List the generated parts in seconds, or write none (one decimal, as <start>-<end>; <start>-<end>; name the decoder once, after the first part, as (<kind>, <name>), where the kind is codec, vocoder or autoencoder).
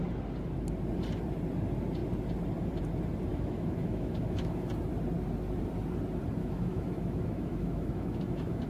3.3-4.7 (autoencoder, DAC-VAE); 6.4-8.7